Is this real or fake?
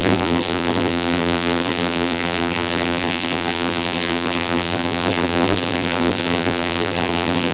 fake